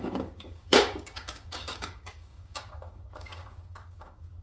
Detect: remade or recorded remade